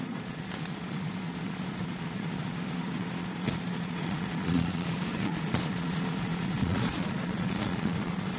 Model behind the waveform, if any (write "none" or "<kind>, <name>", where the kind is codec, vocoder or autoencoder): vocoder, Vocos